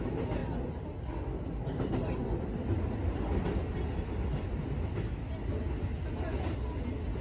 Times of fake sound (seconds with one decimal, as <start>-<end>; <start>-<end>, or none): none